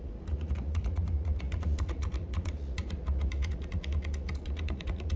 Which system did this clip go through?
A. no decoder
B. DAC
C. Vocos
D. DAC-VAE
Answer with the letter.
C